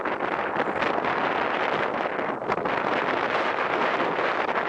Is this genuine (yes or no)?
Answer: yes